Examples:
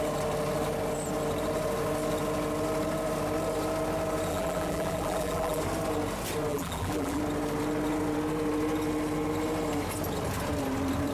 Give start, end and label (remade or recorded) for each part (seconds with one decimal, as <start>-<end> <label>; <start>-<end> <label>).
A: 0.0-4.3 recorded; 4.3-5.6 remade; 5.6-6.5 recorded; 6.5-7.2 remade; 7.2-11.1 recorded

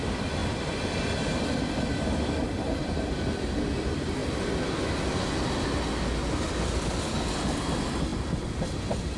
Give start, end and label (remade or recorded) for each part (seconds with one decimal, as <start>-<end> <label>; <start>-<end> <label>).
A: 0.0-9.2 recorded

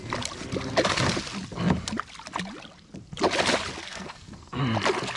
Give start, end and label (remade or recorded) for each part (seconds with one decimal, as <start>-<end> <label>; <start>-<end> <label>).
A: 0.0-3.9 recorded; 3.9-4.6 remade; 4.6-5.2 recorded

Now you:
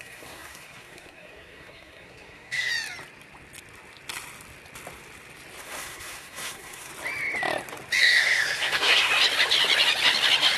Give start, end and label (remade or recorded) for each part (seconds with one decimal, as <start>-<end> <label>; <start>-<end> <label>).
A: 0.0-2.7 remade; 2.7-5.6 recorded; 5.6-6.9 remade; 6.9-8.0 recorded; 8.0-9.1 remade; 9.1-10.6 recorded